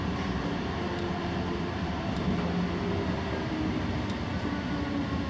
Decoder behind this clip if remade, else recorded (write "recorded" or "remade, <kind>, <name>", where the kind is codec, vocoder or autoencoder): recorded